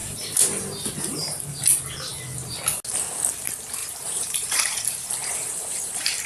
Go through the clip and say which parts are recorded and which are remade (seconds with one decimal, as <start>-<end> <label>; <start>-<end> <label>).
0.0-1.6 remade; 1.6-3.8 recorded; 3.8-6.3 remade